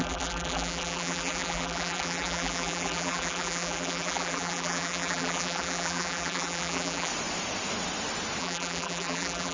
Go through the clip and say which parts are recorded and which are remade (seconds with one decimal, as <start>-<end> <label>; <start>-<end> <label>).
0.0-7.1 remade; 7.1-8.4 recorded; 8.4-9.5 remade